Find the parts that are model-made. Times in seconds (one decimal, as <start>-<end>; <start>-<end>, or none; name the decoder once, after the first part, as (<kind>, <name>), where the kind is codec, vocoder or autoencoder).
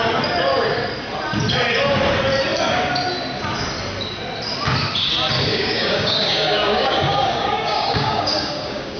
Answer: 5.5-9.0 (codec, DAC)